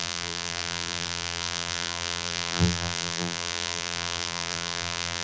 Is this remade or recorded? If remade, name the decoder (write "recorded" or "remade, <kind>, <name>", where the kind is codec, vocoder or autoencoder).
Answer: remade, vocoder, BigVGAN v2